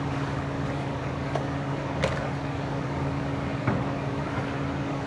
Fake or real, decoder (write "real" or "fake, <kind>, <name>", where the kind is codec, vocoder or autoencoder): fake, codec, DAC